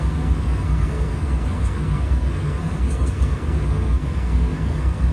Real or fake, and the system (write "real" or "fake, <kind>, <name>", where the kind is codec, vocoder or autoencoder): fake, codec, SNAC